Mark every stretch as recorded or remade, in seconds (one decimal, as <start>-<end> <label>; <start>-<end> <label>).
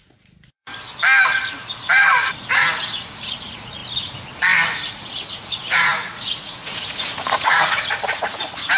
0.0-0.7 remade; 0.7-1.5 recorded; 1.5-3.8 remade; 3.8-4.9 recorded; 4.9-8.8 remade